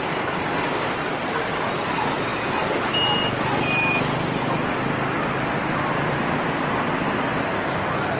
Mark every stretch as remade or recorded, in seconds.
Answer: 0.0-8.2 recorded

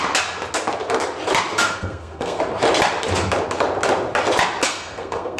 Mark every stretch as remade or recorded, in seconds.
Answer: 0.0-1.5 recorded; 1.5-2.4 remade; 2.4-4.7 recorded; 4.7-5.4 remade